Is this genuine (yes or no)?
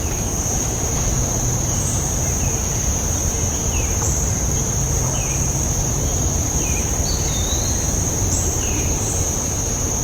no